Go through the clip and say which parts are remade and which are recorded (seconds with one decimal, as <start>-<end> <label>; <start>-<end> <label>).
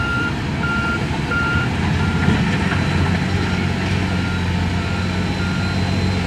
0.0-2.2 remade; 2.2-6.3 recorded